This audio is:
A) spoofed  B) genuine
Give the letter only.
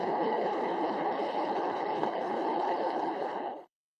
A